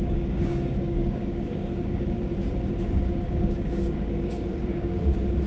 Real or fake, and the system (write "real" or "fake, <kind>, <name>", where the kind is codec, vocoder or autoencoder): fake, codec, DAC